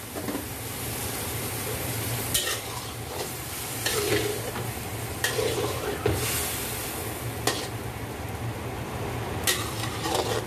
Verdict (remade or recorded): recorded